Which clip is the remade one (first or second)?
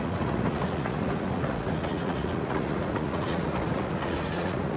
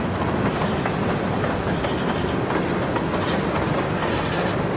first